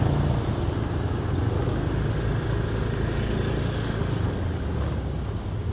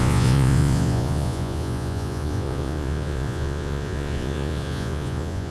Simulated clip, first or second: second